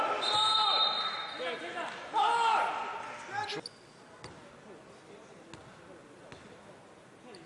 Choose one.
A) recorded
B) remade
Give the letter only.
A